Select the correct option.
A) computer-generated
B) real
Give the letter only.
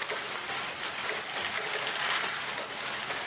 B